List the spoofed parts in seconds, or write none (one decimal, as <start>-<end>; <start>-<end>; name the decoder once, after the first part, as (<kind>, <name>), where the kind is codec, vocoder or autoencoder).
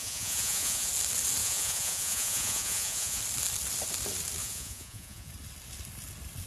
0.0-0.9 (vocoder, Vocos); 1.4-3.2; 4.4-5.3